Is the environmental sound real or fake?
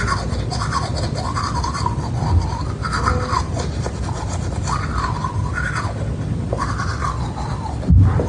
real